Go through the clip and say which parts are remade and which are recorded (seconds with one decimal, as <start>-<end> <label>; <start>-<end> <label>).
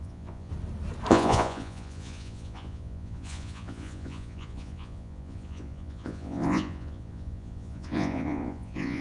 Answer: 0.0-0.5 remade; 0.5-1.1 recorded; 1.1-9.0 remade